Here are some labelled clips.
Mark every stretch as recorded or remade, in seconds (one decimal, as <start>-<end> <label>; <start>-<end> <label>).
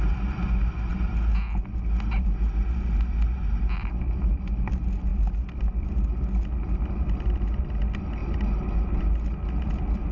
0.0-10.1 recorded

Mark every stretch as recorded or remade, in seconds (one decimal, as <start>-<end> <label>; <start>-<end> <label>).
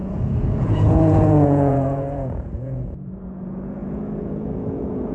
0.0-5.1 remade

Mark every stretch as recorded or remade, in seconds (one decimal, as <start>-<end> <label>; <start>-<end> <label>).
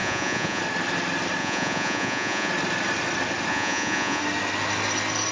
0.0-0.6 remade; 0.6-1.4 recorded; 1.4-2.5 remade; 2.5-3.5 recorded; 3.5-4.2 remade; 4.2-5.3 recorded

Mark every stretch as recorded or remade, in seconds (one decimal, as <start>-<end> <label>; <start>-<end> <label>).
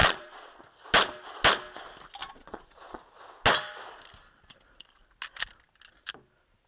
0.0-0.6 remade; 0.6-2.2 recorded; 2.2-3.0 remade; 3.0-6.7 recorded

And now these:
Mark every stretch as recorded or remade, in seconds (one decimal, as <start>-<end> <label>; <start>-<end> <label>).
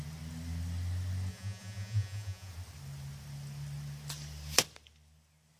0.0-1.3 recorded; 1.3-2.5 remade; 2.5-5.6 recorded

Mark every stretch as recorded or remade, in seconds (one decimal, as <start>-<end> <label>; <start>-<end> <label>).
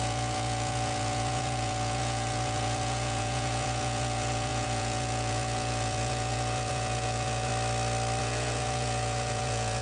0.0-7.5 remade; 7.5-8.2 recorded; 8.2-9.8 remade